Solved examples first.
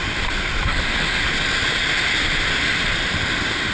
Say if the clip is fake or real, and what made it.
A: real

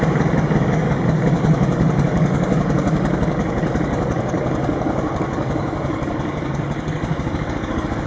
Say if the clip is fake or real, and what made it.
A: fake, codec, DAC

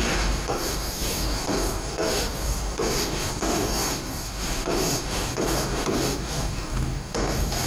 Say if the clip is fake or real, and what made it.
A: fake, codec, DAC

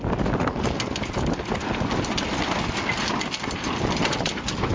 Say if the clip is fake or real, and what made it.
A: real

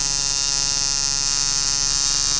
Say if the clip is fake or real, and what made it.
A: real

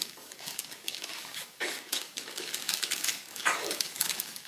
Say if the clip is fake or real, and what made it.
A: fake, codec, DAC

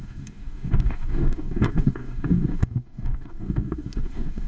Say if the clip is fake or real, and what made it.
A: fake, codec, DAC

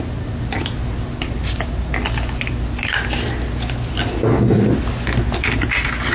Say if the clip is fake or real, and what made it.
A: real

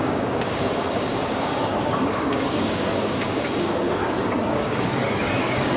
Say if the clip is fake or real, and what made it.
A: fake, codec, DAC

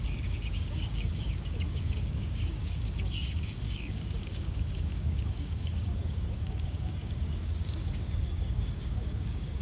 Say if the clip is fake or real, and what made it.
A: fake, codec, DAC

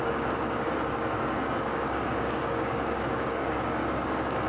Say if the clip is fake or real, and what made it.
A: fake, codec, DAC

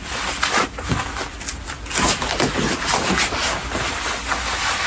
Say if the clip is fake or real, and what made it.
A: real